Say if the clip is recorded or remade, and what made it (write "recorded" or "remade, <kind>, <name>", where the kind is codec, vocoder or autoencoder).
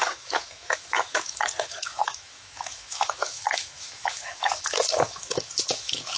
remade, autoencoder, DAC-VAE